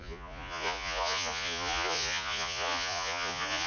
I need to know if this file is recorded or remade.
remade